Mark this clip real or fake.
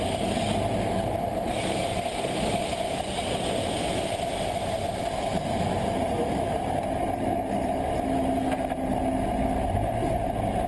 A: real